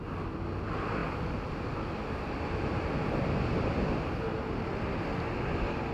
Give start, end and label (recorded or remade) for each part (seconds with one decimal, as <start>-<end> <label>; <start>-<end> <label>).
0.0-1.0 recorded; 1.0-4.5 remade; 4.5-5.9 recorded